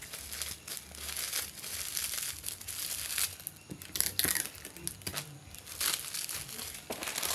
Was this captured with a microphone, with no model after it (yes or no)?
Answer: yes